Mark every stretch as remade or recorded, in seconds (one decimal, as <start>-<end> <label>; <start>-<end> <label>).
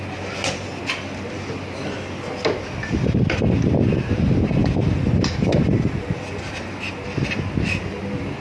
0.0-4.6 recorded; 4.6-6.4 remade; 6.4-8.4 recorded